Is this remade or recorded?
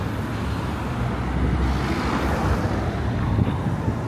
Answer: recorded